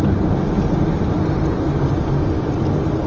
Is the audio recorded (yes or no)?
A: yes